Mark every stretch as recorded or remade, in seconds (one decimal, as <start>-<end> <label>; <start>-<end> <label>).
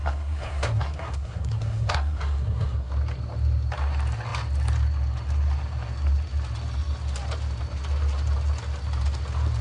0.0-2.9 remade; 2.9-9.6 recorded